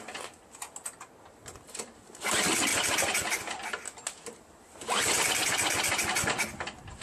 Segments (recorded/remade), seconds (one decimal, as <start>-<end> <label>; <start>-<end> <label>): 0.0-7.0 recorded

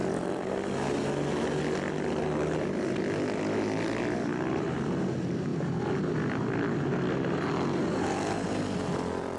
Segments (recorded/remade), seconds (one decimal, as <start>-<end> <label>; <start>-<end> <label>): 0.0-9.4 recorded

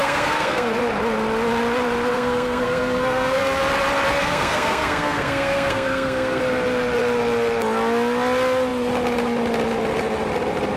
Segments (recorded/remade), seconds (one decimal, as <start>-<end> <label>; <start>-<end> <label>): 0.0-0.8 remade; 0.8-2.1 recorded; 2.1-3.6 remade; 3.6-4.2 recorded; 4.2-6.4 remade; 6.4-10.8 recorded

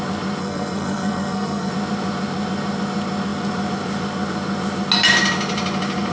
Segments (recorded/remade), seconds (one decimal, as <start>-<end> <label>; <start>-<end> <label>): 0.0-0.4 recorded; 0.4-1.7 remade; 1.7-6.1 recorded

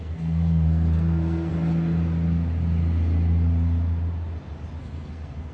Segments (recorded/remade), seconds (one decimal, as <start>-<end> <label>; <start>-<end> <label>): 0.0-1.5 remade; 1.5-4.8 recorded; 4.8-5.5 remade

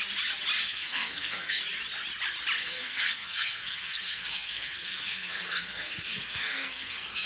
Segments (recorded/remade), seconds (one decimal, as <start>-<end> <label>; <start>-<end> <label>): 0.0-0.6 recorded; 0.6-1.6 remade; 1.6-2.6 recorded; 2.6-7.3 remade

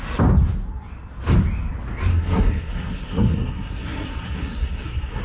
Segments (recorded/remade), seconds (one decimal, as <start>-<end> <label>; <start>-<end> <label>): 0.0-2.1 recorded; 2.1-5.2 remade

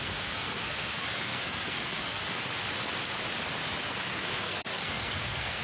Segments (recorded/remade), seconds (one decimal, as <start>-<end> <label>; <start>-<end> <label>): 0.0-2.2 remade; 2.2-3.9 recorded; 3.9-5.6 remade